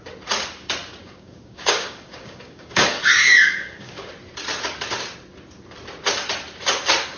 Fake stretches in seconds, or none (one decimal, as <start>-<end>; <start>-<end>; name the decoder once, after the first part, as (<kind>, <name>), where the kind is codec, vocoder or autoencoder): 1.0-4.1 (codec, DAC)